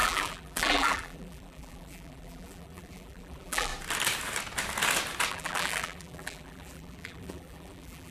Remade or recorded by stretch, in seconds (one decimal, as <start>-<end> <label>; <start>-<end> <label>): 0.0-3.7 remade; 3.7-5.3 recorded; 5.3-8.1 remade